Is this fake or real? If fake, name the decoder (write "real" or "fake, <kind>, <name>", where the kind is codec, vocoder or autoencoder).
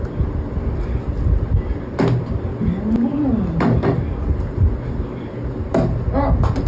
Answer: real